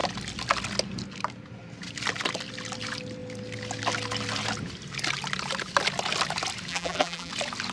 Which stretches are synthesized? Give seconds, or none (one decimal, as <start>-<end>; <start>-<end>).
6.7-7.3